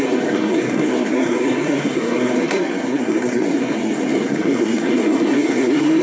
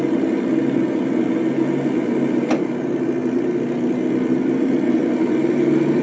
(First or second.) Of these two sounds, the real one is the second